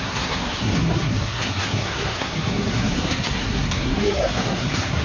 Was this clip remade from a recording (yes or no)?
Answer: yes